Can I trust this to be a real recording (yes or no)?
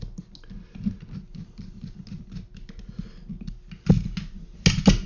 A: yes